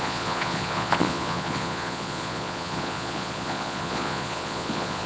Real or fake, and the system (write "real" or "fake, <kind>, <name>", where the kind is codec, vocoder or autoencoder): fake, vocoder, Vocos